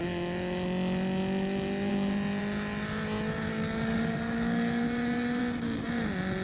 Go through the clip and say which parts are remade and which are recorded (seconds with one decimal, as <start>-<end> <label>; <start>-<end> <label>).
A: 0.0-3.5 recorded; 3.5-5.4 remade; 5.4-6.4 recorded